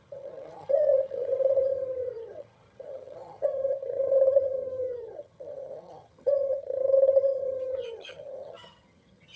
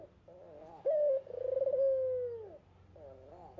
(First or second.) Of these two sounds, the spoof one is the first